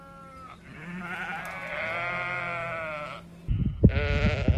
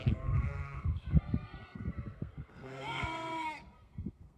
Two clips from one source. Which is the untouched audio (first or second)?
first